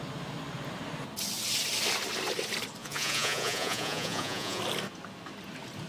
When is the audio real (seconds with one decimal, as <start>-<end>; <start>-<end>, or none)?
0.0-2.8; 4.6-5.9